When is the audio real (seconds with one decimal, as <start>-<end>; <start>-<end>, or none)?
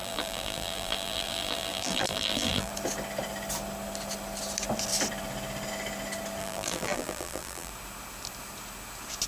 2.7-6.4; 7.7-9.3